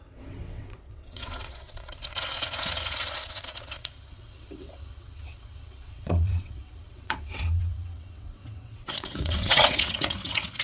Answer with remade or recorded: remade